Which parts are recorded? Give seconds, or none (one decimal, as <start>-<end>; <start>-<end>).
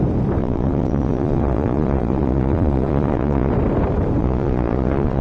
0.0-0.4; 3.5-4.2